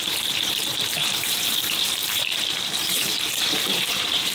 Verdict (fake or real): fake